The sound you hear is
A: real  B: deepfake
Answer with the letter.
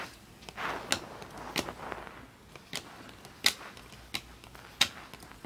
A